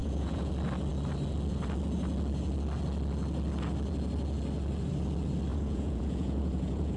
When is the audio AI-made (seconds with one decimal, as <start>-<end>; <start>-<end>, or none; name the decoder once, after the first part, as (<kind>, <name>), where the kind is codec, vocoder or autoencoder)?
0.0-0.5 (vocoder, Vocos); 5.5-7.0